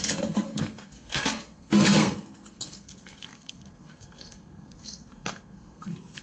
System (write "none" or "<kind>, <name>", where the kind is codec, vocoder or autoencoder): codec, SNAC